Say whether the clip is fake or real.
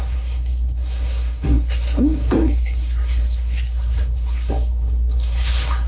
fake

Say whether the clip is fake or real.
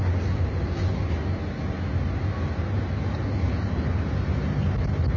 real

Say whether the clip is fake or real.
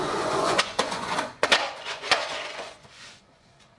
fake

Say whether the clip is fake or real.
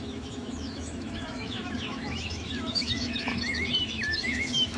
fake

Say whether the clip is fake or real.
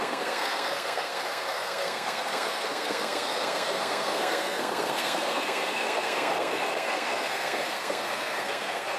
fake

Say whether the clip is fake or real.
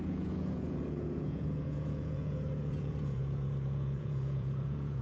fake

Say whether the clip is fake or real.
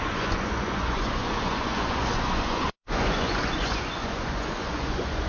fake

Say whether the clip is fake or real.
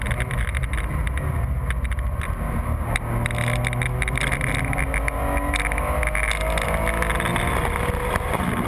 real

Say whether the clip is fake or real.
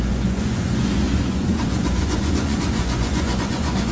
fake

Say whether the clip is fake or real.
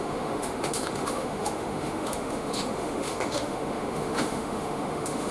fake